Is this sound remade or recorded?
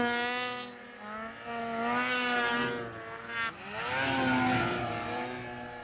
recorded